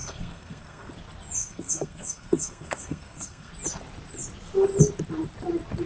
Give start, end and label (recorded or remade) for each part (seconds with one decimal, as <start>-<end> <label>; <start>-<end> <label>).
0.0-0.9 remade; 0.9-1.4 recorded; 1.4-3.5 remade; 3.5-5.9 recorded